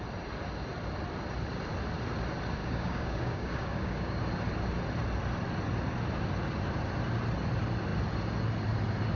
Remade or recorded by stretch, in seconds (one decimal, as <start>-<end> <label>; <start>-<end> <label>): 0.0-2.6 recorded; 2.6-4.2 remade; 4.2-9.2 recorded